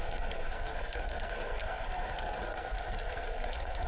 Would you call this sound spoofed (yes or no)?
yes